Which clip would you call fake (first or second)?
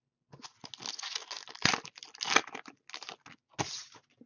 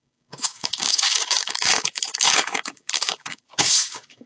second